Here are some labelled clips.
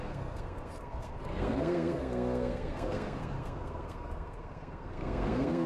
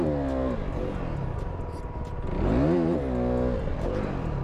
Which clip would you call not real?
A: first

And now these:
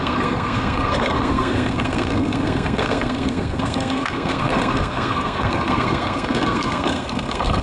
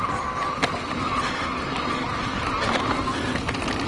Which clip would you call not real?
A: first